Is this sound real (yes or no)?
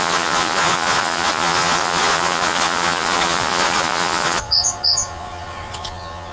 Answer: no